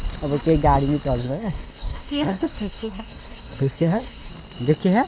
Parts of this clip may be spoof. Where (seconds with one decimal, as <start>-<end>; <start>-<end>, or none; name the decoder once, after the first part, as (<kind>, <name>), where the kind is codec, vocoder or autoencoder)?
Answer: 1.2-4.3 (codec, SNAC)